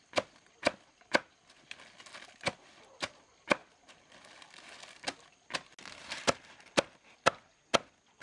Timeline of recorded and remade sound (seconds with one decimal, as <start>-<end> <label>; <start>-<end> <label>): 0.0-8.2 recorded